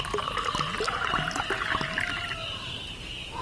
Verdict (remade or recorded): recorded